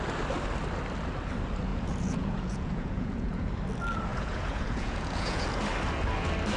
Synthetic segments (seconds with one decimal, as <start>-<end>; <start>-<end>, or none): 1.7-3.5; 4.1-5.6